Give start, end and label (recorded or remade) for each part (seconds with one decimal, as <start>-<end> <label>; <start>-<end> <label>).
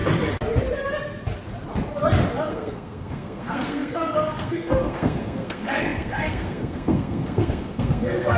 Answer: 0.0-2.5 recorded; 2.5-8.4 remade